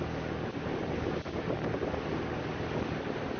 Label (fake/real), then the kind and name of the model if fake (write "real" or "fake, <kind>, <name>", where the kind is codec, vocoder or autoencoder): real